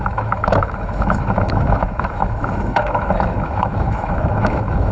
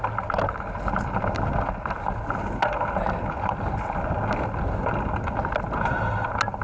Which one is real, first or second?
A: second